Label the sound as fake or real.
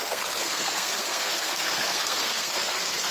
fake